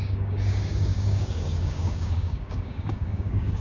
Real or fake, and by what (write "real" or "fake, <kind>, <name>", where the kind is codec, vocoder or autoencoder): fake, codec, DAC